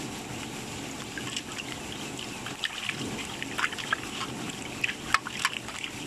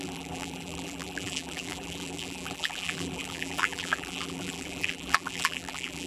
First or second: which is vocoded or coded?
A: second